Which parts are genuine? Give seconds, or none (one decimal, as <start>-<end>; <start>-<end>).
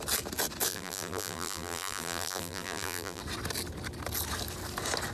0.0-0.7; 3.2-5.1